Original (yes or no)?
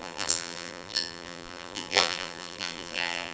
no